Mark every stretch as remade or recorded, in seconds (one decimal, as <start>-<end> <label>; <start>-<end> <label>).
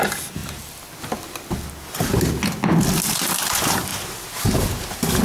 0.0-5.2 recorded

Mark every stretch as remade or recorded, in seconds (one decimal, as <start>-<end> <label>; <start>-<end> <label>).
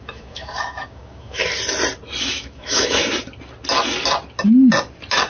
0.0-1.4 remade; 1.4-2.2 recorded; 2.2-3.0 remade; 3.0-5.3 recorded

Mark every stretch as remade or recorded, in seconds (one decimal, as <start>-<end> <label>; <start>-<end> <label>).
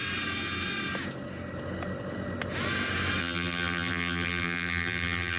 0.0-3.2 recorded; 3.2-5.4 remade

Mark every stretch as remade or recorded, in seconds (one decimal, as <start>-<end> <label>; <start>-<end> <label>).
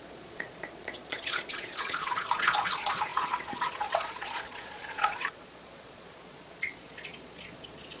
0.0-8.0 remade